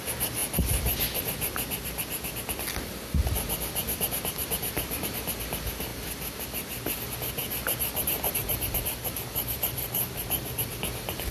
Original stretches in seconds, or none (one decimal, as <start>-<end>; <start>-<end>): 0.0-8.4; 10.8-11.3